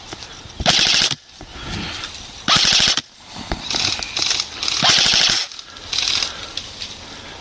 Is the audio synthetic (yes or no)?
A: no